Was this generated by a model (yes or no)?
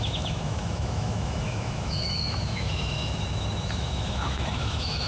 yes